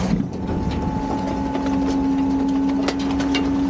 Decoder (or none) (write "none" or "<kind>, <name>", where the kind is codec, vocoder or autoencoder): none